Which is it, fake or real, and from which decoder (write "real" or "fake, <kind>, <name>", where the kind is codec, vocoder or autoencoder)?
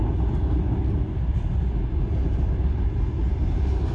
real